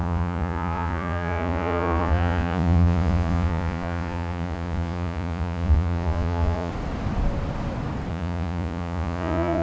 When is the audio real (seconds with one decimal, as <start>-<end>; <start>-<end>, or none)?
6.7-8.1